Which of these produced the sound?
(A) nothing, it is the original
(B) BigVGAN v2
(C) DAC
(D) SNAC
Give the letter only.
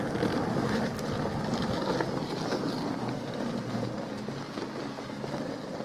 A